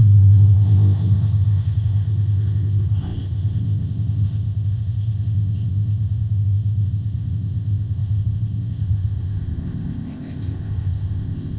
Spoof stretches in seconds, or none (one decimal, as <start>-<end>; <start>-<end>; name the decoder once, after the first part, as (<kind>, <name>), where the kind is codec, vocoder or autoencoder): 0.0-11.6 (codec, ZipCodec)